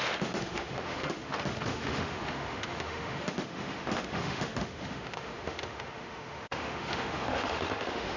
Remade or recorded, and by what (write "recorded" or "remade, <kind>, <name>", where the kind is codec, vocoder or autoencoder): remade, autoencoder, DAC-VAE